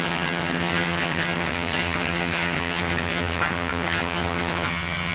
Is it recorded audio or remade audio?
remade